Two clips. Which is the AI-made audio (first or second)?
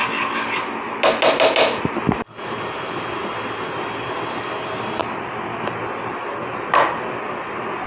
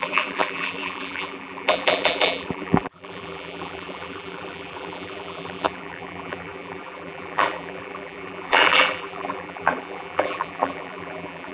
second